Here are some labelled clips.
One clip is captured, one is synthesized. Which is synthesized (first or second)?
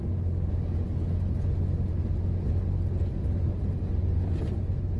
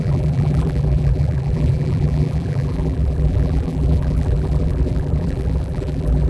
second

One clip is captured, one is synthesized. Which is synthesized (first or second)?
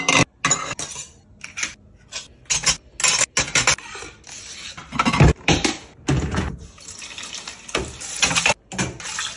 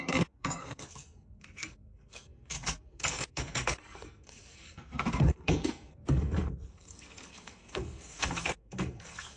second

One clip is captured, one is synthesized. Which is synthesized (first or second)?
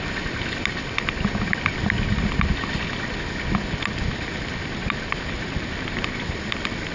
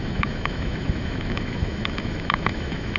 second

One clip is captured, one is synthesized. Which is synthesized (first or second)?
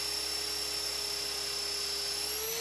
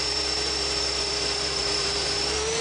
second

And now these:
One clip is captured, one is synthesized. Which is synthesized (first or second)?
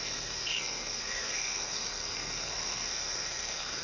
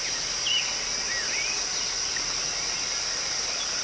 first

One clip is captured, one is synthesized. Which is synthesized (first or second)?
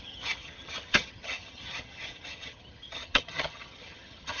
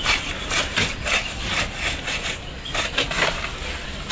first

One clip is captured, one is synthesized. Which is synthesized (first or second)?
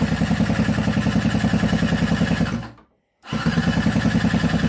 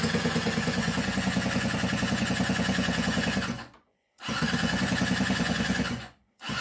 second